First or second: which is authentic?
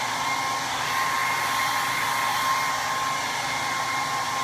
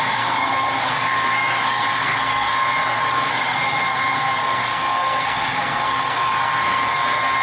first